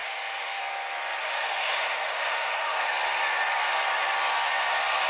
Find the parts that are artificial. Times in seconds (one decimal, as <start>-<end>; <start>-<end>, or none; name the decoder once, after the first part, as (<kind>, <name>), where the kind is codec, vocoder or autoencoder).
0.0-0.6 (autoencoder, DAC-VAE); 1.2-2.9